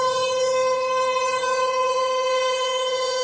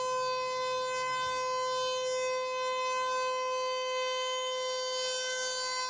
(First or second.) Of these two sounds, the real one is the second